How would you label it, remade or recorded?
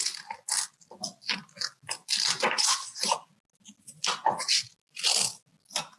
recorded